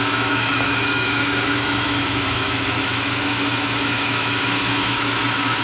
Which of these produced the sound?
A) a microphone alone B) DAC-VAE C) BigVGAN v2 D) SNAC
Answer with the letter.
B